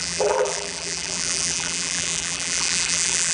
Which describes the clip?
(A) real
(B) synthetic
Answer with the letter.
B